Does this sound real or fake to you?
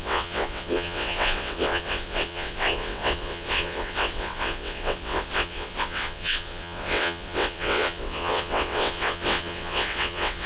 fake